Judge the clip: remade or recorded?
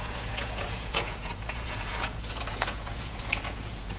remade